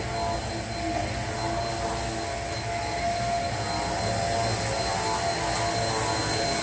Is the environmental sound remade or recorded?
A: recorded